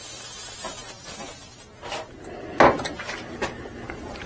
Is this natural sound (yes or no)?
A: yes